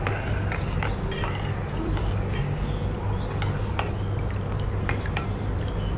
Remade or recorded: recorded